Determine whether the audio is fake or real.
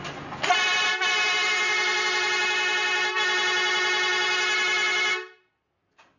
real